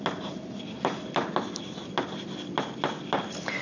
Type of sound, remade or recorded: recorded